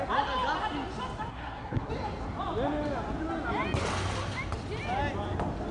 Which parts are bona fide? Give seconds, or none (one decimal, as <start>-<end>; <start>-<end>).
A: 0.0-1.3; 1.9-5.7